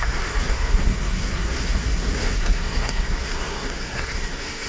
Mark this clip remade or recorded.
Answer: remade